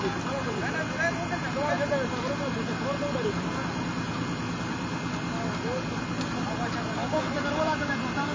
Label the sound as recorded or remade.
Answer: recorded